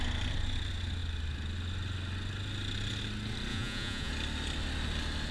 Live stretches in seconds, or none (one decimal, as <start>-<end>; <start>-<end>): 0.0-3.5; 4.1-5.3